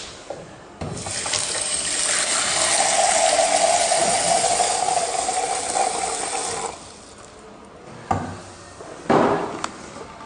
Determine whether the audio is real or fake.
real